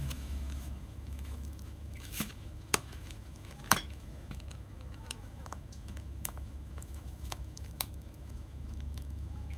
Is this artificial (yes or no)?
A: yes